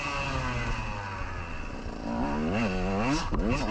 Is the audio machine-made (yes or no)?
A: no